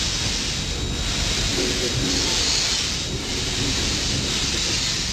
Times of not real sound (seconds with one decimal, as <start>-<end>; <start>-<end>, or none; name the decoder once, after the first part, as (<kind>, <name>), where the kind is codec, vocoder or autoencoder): 1.5-4.6 (vocoder, BigVGAN v2)